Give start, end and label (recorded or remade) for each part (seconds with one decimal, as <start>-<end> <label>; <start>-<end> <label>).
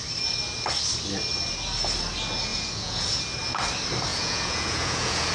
0.0-2.5 recorded; 2.5-3.2 remade; 3.2-4.1 recorded; 4.1-5.3 remade